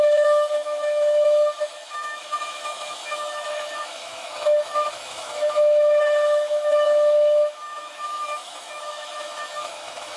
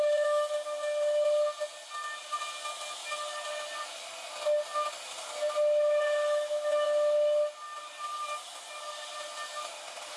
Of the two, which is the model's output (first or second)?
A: first